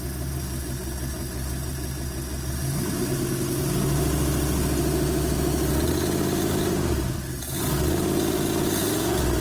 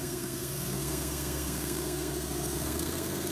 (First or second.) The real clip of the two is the first